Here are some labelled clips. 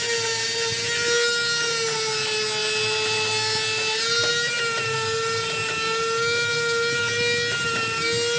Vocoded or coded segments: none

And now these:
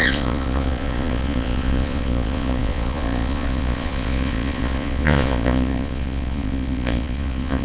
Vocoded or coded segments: 0.0-7.6 (vocoder, Vocos)

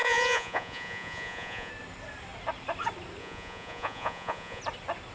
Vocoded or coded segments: 0.0-1.7 (vocoder, Vocos); 3.2-4.6

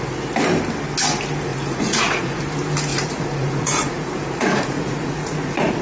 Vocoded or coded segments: 1.5-2.4 (vocoder, Vocos); 2.9-5.8

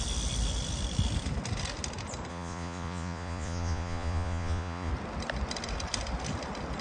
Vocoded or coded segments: 2.3-4.9 (vocoder, Vocos)